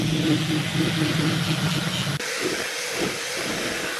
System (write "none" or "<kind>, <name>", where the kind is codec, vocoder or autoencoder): none